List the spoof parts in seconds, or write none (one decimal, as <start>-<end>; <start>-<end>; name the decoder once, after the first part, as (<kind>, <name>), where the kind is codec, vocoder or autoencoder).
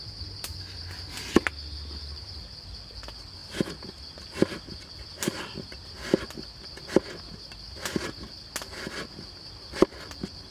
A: none